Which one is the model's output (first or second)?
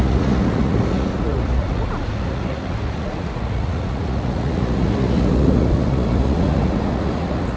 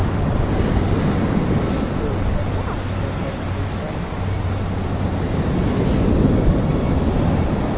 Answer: first